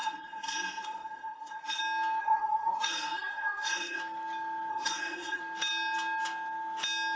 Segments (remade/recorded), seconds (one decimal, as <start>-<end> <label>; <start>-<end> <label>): 0.0-1.8 remade; 1.8-2.2 recorded; 2.2-4.0 remade; 4.0-4.7 recorded; 4.7-5.4 remade; 5.4-7.2 recorded